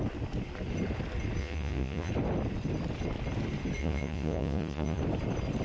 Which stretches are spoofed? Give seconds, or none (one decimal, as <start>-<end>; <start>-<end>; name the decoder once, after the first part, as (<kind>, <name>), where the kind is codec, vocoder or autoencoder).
1.4-2.1 (vocoder, Vocos); 3.8-5.0